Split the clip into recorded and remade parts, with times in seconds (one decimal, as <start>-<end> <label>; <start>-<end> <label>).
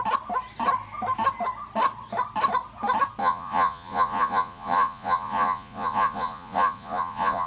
0.0-3.2 recorded; 3.2-7.5 remade